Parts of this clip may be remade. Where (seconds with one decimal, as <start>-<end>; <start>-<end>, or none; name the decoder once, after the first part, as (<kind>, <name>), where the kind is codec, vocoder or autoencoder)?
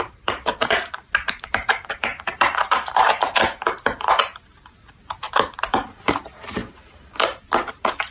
0.0-6.6 (vocoder, BigVGAN v2); 7.5-8.1